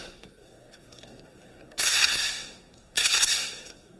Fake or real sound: fake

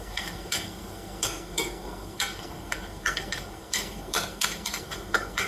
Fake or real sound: fake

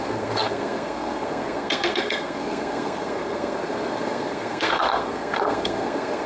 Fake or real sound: fake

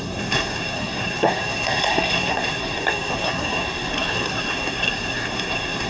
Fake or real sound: fake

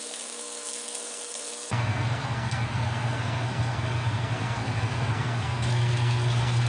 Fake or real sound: fake